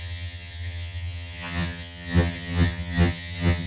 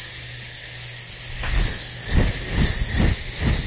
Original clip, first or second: second